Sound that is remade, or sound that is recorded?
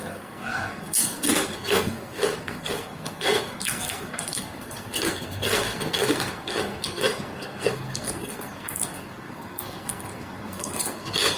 remade